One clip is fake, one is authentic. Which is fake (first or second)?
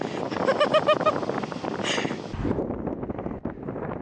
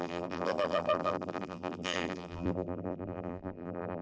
second